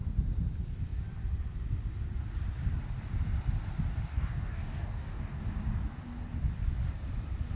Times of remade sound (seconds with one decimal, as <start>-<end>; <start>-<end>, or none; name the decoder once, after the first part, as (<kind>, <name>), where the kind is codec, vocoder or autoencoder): 4.1-5.5 (codec, DAC)

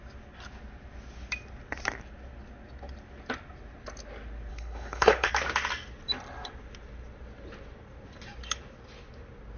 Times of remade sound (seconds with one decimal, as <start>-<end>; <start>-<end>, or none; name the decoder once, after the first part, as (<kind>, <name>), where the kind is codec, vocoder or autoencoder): 4.5-5.3 (codec, HILCodec)